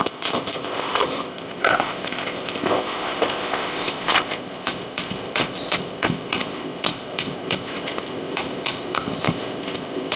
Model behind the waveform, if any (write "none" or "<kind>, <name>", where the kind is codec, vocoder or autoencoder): codec, ZipCodec